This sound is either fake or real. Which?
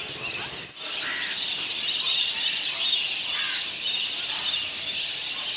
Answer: real